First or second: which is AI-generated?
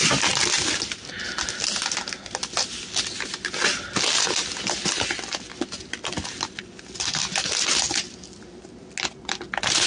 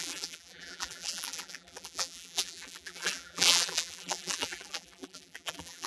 second